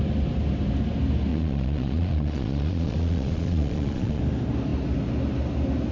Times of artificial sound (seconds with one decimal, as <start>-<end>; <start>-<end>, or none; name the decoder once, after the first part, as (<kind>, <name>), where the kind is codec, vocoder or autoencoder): 1.3-4.2 (vocoder, Vocos)